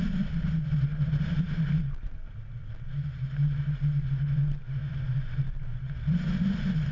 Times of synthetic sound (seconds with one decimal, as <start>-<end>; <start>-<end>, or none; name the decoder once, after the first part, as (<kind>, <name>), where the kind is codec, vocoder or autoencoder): none